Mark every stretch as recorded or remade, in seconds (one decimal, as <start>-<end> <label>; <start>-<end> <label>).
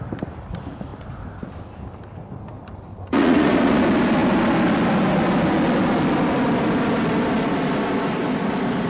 0.0-2.9 recorded; 2.9-3.8 remade; 3.8-8.9 recorded